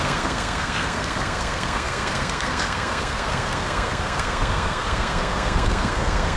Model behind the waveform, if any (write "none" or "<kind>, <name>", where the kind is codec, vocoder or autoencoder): codec, SNAC